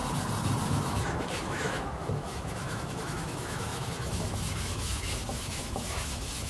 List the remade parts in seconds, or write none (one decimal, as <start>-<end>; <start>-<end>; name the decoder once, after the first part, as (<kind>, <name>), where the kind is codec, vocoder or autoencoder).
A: 0.7-6.5 (autoencoder, DAC-VAE)

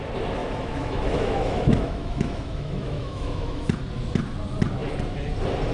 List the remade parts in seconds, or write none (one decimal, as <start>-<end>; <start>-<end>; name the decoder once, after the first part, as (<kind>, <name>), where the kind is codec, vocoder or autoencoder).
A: 0.4-3.8 (autoencoder, DAC-VAE)